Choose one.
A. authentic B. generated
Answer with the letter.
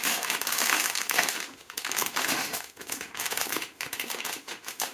B